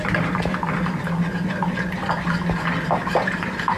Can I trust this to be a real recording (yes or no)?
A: yes